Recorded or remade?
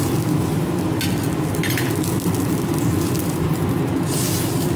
recorded